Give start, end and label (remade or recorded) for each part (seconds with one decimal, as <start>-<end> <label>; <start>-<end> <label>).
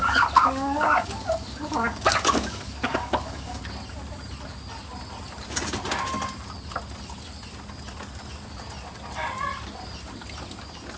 0.0-3.6 remade; 3.6-11.0 recorded